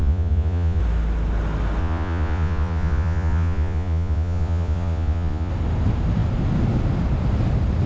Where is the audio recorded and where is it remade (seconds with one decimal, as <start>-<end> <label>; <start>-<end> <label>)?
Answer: 0.0-0.8 remade; 0.8-1.8 recorded; 1.8-5.5 remade; 5.5-7.9 recorded